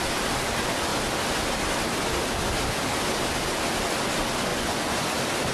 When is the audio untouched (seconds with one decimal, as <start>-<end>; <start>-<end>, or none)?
0.0-4.5; 5.1-5.5